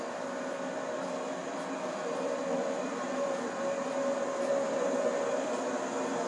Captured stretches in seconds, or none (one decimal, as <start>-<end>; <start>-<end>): 0.0-1.4; 3.6-4.5; 5.6-6.3

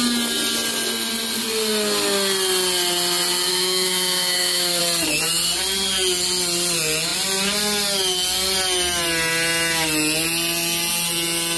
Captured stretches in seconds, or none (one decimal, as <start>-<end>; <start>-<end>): 0.0-3.5; 4.8-11.6

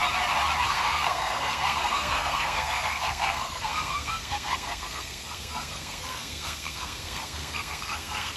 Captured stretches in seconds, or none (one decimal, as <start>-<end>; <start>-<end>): 0.0-0.7

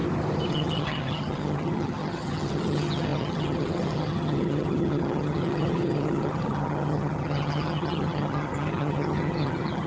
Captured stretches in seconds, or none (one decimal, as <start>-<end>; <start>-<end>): 0.0-0.5

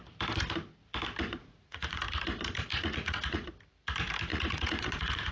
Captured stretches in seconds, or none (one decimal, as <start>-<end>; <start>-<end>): 0.0-1.4; 2.0-2.7; 3.5-4.3

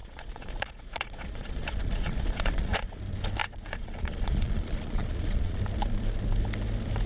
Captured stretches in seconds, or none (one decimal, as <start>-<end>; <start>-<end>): 3.0-3.4; 5.6-7.1

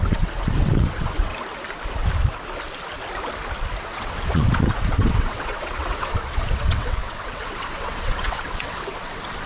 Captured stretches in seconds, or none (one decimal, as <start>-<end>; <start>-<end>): 1.3-3.8

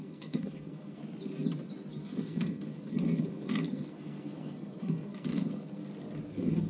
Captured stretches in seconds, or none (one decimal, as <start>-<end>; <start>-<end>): 1.0-1.9; 5.8-6.3